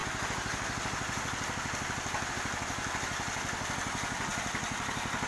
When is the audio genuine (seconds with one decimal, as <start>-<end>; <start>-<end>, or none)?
0.0-5.3